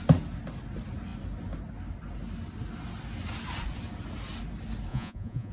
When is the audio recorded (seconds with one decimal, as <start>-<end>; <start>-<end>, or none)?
0.0-4.9